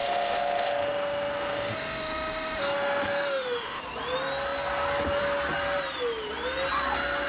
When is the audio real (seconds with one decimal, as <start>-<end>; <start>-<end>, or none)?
3.8-7.3